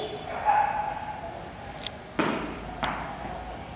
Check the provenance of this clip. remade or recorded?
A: recorded